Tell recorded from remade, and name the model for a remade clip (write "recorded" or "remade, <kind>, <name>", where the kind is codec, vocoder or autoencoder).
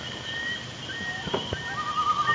recorded